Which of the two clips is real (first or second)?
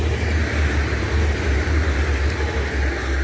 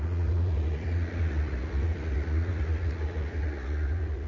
first